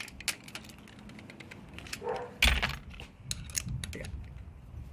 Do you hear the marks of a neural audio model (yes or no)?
no